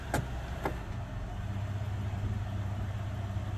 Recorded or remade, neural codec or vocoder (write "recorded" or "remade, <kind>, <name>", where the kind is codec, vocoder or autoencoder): recorded